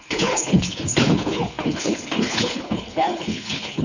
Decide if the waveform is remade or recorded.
remade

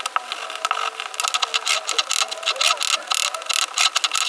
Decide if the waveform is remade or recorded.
recorded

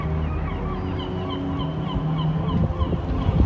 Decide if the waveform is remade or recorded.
recorded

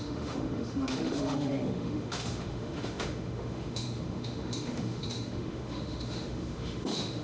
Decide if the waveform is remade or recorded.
remade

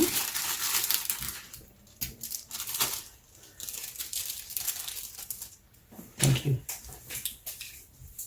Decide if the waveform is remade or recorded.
remade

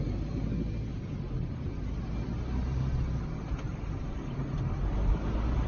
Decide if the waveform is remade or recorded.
recorded